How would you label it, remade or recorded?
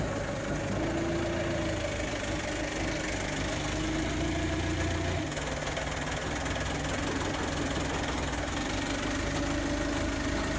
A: recorded